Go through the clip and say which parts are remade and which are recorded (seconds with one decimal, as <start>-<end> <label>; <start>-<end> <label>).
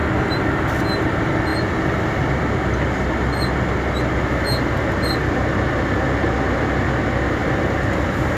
0.0-0.7 remade; 0.7-7.4 recorded; 7.4-8.4 remade